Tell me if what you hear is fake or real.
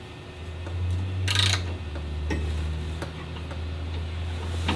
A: real